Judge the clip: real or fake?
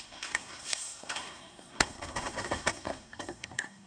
fake